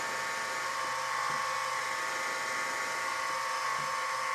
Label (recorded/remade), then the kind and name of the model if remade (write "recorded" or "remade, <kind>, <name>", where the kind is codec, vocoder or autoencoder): recorded